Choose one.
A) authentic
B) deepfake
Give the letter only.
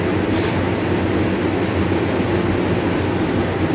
A